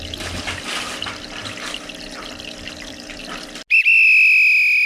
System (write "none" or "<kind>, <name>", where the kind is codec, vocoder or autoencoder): none